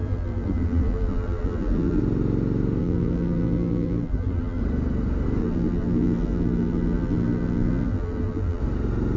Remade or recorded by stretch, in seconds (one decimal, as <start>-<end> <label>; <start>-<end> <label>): 0.0-2.0 remade; 2.0-2.8 recorded; 2.8-4.6 remade; 4.6-5.4 recorded; 5.4-8.6 remade; 8.6-9.2 recorded